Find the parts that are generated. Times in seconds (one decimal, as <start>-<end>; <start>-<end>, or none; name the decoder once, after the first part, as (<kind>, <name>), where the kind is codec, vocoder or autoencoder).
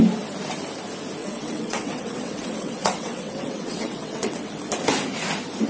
1.2-4.6 (vocoder, WaveNeXt)